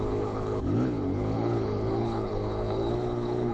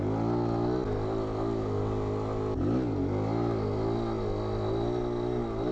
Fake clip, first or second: first